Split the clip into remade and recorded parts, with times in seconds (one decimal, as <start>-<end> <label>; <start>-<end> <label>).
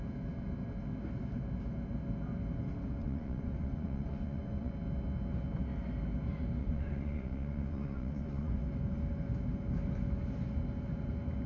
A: 0.0-3.0 recorded; 3.0-4.7 remade; 4.7-6.6 recorded; 6.6-8.5 remade; 8.5-11.5 recorded